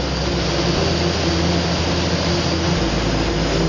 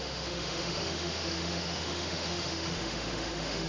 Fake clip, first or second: second